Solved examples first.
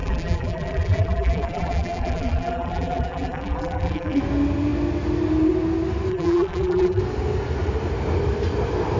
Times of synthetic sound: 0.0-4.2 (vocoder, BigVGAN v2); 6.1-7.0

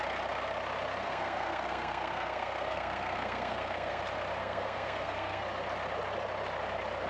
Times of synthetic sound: 1.0-4.0 (codec, SNAC); 4.4-5.4

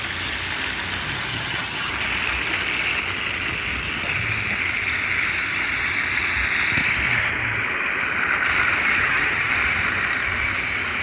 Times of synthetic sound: 1.3-1.9 (vocoder, HiFi-GAN); 9.0-9.5

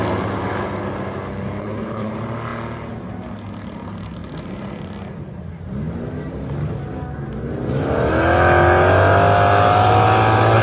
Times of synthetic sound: 1.6-2.1 (codec, HILCodec)